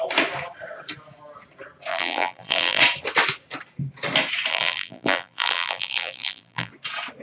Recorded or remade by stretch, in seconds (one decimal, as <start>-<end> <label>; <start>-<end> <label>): 0.0-1.9 recorded; 1.9-2.8 remade; 2.8-4.5 recorded; 4.5-6.7 remade; 6.7-7.2 recorded